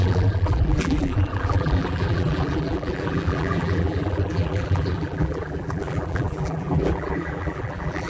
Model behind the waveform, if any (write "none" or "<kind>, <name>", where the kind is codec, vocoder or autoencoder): vocoder, BigVGAN v2